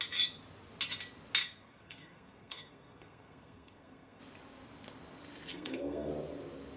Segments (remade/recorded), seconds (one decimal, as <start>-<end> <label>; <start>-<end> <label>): 0.0-1.4 recorded; 1.4-4.2 remade; 4.2-5.5 recorded; 5.5-6.1 remade; 6.1-6.8 recorded